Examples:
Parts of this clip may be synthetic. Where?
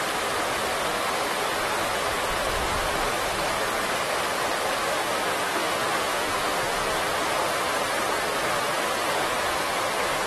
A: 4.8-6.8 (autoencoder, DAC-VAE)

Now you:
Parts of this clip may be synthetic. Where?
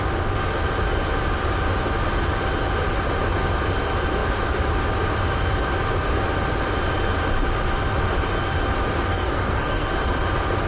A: 9.1-9.9 (codec, SNAC)